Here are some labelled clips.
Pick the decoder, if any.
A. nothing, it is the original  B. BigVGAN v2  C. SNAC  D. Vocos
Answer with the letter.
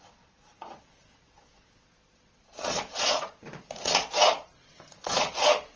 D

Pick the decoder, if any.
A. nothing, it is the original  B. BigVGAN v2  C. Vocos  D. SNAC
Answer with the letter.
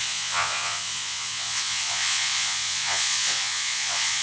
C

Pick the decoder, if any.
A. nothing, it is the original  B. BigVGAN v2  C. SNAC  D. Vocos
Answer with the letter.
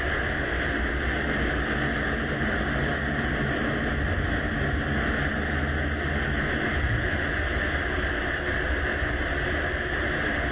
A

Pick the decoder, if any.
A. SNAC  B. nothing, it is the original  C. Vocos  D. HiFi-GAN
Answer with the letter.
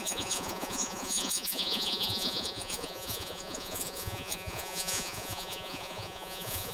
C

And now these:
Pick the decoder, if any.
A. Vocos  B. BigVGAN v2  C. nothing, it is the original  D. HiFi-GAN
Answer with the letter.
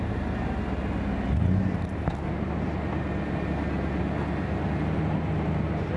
C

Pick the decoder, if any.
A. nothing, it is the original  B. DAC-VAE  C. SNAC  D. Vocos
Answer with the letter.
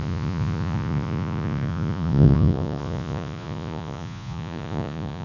D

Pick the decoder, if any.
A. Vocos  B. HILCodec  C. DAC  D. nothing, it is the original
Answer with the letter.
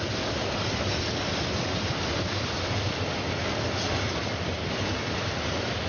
D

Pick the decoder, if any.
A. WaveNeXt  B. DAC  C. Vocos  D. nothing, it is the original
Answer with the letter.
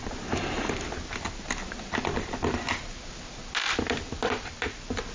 D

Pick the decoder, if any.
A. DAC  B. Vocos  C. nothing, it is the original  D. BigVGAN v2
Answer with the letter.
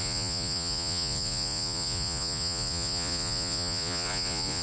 B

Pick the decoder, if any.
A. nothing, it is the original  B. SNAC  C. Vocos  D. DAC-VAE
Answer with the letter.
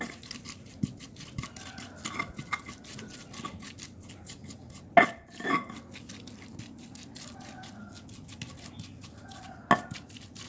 A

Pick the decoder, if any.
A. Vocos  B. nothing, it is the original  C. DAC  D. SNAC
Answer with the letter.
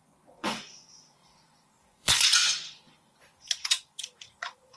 A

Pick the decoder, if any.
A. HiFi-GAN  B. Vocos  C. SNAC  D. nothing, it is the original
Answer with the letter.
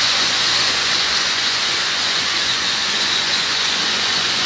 B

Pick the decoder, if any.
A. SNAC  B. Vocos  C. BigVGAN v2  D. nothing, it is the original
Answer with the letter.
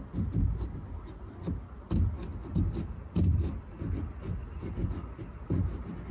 D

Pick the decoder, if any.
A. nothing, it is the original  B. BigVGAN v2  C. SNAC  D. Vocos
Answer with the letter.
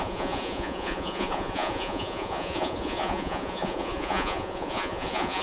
D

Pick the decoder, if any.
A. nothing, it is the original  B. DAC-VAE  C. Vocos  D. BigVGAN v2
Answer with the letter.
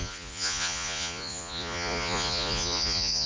C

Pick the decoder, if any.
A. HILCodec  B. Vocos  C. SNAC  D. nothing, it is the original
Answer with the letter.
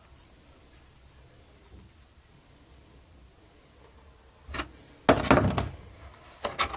D